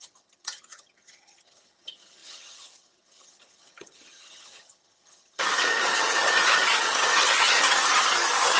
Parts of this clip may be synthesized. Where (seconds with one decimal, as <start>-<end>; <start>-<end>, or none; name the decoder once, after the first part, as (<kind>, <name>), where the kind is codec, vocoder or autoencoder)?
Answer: 0.0-8.6 (vocoder, HiFi-GAN)